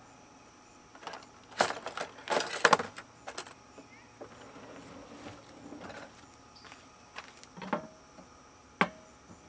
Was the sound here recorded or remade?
recorded